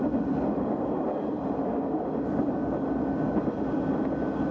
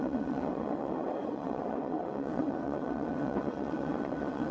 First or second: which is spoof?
second